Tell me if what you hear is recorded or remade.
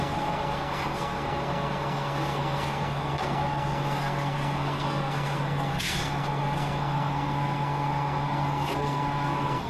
remade